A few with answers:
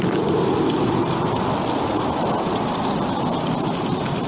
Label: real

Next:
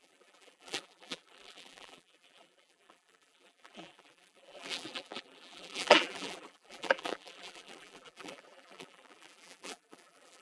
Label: fake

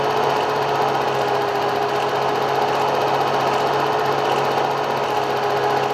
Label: real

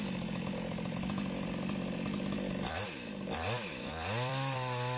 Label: fake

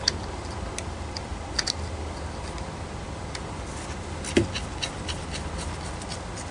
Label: real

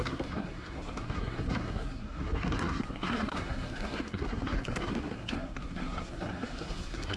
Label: fake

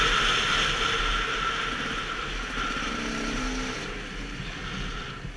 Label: real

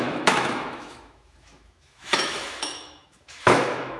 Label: fake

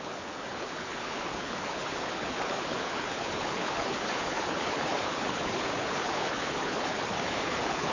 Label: fake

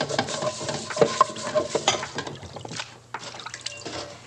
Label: real